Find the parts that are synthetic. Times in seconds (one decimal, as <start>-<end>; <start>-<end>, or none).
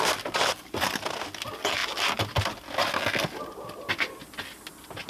none